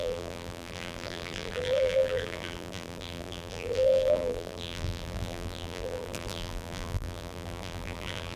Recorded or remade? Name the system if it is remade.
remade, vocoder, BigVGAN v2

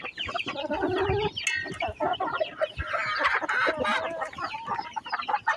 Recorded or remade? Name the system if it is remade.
recorded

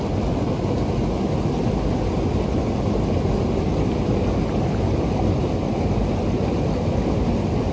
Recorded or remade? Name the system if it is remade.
recorded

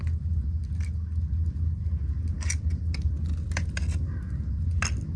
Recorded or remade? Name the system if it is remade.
recorded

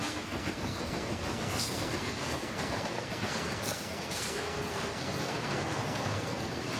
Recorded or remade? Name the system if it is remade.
remade, codec, SNAC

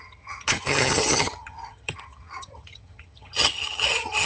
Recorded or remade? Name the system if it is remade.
remade, vocoder, HiFi-GAN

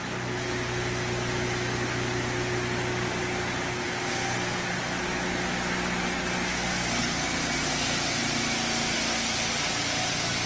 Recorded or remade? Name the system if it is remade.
recorded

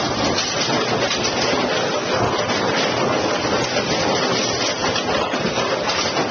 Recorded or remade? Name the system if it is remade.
recorded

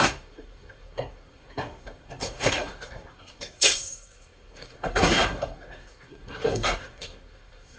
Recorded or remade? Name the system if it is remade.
remade, codec, SNAC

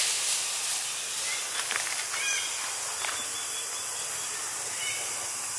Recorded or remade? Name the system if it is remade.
recorded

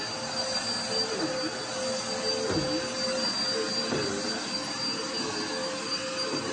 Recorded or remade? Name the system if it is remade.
recorded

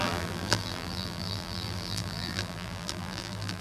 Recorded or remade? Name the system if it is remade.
remade, vocoder, BigVGAN v2